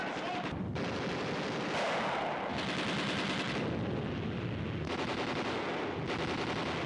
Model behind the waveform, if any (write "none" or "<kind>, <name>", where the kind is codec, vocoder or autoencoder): none